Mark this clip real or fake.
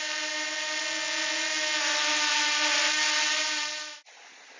real